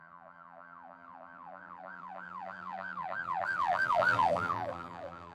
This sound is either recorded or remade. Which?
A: remade